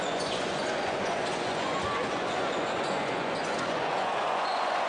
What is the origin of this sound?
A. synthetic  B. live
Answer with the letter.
A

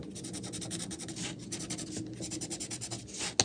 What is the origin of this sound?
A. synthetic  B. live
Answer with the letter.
B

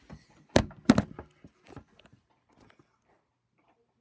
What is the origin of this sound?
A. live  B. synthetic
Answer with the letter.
A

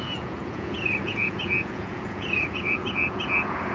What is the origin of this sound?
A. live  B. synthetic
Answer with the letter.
B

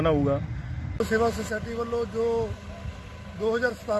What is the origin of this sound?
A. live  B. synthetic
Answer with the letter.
A